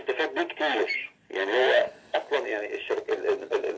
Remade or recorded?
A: recorded